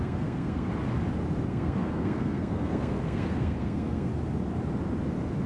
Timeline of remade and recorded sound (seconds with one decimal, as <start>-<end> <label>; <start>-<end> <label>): 0.0-0.7 remade; 0.7-1.5 recorded; 1.5-4.1 remade; 4.1-5.5 recorded